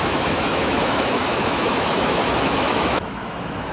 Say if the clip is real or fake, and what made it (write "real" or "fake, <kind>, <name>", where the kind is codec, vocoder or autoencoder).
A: fake, autoencoder, DAC-VAE